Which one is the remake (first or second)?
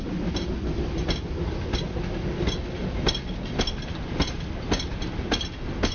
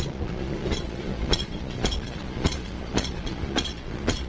second